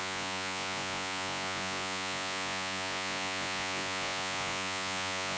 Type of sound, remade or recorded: remade